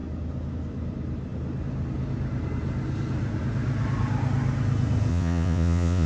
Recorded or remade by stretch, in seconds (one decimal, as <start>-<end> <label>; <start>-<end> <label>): 0.0-5.1 recorded; 5.1-6.1 remade